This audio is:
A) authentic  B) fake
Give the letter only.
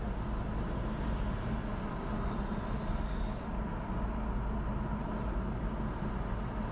A